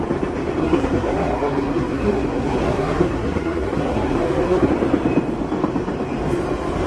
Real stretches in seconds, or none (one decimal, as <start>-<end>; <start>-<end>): 0.0-0.6; 4.7-6.9